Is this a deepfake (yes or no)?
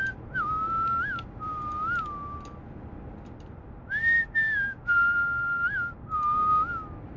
no